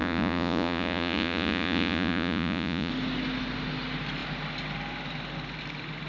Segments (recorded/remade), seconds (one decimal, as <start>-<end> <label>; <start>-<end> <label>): 0.0-2.9 remade; 2.9-6.1 recorded